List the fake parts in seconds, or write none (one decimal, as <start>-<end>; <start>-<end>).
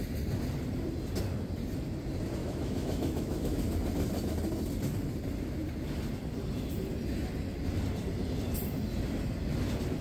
2.4-3.6